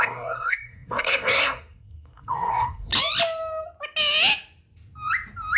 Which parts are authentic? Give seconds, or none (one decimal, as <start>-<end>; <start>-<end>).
2.9-5.6